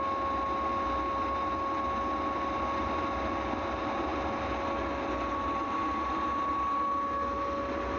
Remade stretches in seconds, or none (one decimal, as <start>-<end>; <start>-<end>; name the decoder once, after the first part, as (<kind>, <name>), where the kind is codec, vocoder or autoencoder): none